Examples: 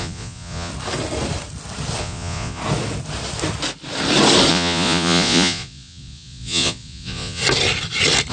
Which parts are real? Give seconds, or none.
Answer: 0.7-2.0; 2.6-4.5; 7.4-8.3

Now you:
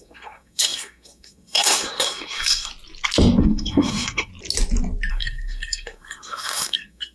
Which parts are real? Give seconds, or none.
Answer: 2.7-3.4; 4.3-5.1